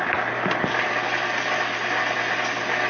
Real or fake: real